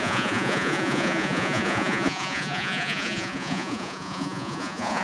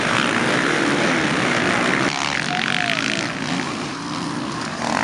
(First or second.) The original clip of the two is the second